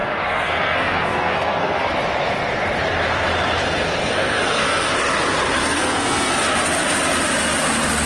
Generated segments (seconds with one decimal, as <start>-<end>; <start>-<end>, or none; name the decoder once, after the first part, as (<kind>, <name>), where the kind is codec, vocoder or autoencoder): 0.0-1.9 (codec, SNAC); 4.0-4.9; 5.6-6.3

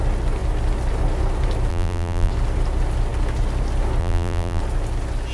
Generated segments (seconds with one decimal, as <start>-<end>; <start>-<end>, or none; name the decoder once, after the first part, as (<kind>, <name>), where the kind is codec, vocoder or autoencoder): 1.7-2.3 (vocoder, BigVGAN v2); 4.0-4.6

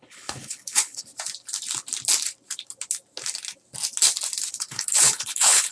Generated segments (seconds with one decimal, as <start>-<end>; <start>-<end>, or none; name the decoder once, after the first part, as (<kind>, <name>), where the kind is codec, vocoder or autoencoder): 0.0-1.1 (codec, HILCodec); 4.5-5.7

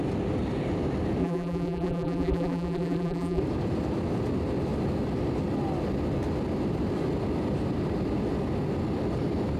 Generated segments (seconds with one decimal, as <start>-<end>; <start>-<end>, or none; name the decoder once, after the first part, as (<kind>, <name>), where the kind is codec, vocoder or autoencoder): 1.2-3.4 (vocoder, BigVGAN v2)